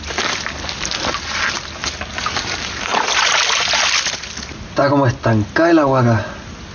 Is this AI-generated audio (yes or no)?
no